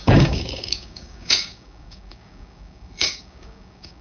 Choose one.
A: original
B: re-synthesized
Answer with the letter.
B